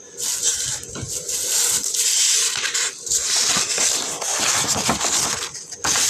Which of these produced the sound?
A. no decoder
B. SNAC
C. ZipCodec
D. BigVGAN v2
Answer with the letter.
D